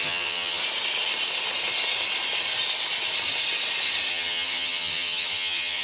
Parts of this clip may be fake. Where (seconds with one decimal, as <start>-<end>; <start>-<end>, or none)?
0.0-0.6; 4.1-5.8